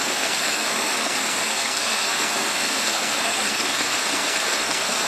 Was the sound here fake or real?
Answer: fake